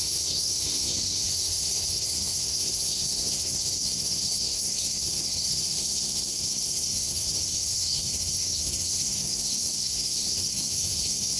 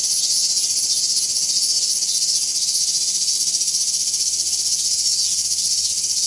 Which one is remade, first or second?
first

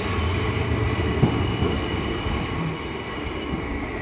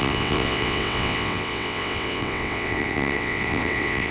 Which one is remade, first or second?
second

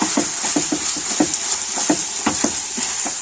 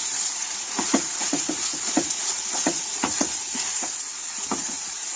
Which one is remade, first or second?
second